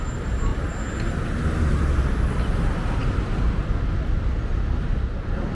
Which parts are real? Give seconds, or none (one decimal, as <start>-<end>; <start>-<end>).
0.0-5.5